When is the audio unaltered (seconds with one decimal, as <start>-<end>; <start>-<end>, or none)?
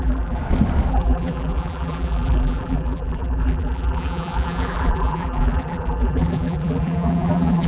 0.4-0.9